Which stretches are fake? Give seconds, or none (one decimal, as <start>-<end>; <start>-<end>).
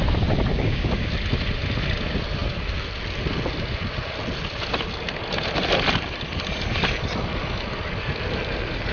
0.5-1.1